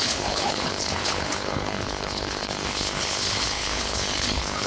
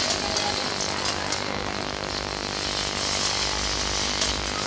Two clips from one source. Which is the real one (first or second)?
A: second